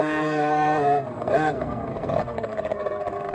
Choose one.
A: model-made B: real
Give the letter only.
A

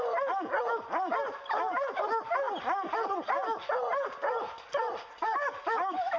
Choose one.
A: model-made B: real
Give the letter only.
B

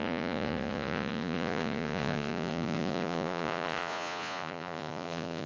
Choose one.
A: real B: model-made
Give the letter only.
B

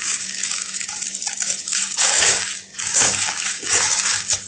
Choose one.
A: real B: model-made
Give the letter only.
B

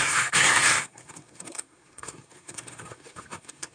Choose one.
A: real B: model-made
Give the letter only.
B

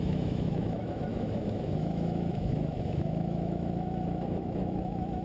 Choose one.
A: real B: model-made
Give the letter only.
B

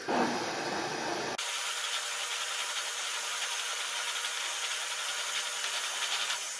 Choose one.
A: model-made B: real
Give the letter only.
B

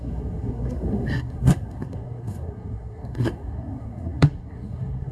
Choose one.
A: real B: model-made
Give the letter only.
B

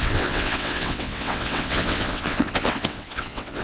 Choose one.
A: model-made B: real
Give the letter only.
A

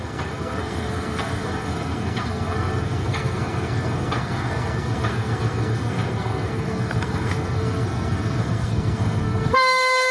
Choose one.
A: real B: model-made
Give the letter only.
B